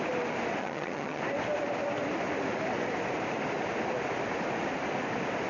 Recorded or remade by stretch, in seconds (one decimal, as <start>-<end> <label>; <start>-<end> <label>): 0.0-0.6 recorded; 0.6-1.2 remade; 1.2-5.5 recorded